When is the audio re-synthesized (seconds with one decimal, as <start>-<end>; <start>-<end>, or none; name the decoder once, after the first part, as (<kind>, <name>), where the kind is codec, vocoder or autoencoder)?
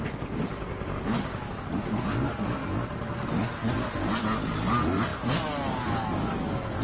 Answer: none